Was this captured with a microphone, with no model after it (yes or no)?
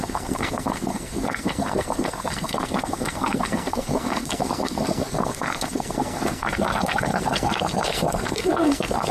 no